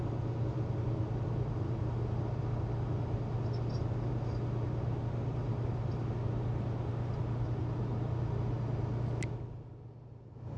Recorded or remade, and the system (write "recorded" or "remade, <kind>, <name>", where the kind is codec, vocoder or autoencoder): recorded